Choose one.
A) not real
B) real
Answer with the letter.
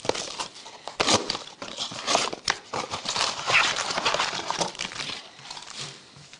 A